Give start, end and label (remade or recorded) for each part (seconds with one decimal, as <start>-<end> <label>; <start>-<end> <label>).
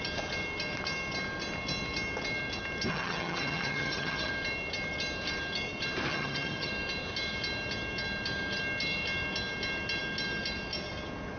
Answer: 0.0-2.9 recorded; 2.9-4.3 remade; 4.3-6.1 recorded; 6.1-6.7 remade; 6.7-11.4 recorded